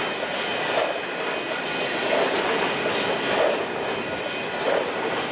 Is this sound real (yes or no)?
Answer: yes